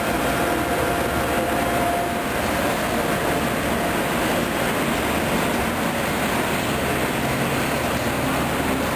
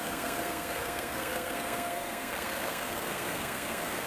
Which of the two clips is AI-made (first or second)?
second